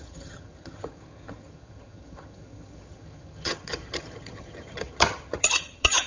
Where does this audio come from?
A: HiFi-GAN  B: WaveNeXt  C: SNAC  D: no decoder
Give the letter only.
A